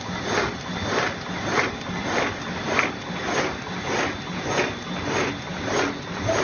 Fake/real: real